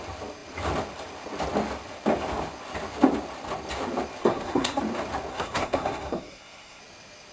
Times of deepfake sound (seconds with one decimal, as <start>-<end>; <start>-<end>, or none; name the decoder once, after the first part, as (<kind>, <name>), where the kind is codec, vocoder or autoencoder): 4.2-4.8 (codec, SNAC); 5.3-6.8